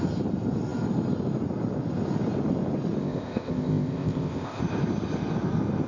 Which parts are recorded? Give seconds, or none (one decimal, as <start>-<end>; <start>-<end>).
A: 0.0-3.0; 4.6-5.9

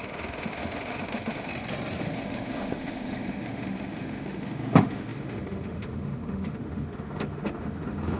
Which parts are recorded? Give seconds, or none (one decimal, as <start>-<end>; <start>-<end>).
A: 1.5-2.0